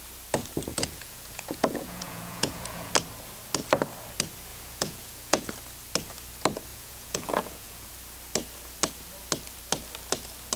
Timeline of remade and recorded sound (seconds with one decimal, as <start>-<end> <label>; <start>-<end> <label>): 0.0-0.7 recorded; 0.7-2.9 remade; 2.9-4.5 recorded; 4.5-5.5 remade; 5.5-6.7 recorded; 6.7-7.9 remade; 7.9-10.6 recorded